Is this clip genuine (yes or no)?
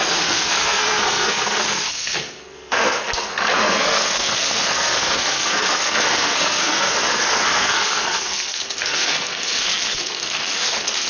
no